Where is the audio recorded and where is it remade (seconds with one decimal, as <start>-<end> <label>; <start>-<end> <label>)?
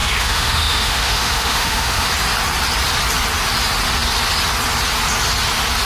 0.0-2.1 remade; 2.1-5.9 recorded